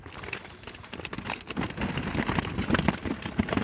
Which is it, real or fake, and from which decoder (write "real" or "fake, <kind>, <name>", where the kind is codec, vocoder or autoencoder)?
real